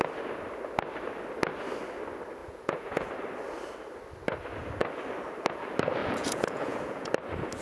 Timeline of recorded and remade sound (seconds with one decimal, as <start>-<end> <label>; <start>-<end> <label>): 0.0-2.4 recorded; 2.4-3.1 remade; 3.1-6.0 recorded; 6.0-7.1 remade; 7.1-7.6 recorded